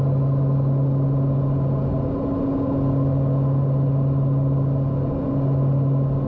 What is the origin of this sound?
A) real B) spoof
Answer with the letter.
A